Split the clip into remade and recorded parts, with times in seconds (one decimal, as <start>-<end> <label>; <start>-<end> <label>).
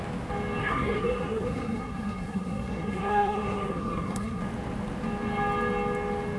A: 0.0-0.6 recorded; 0.6-4.4 remade; 4.4-6.4 recorded